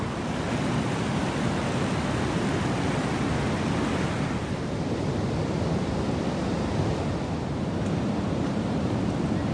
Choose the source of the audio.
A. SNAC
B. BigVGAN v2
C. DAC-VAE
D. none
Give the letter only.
D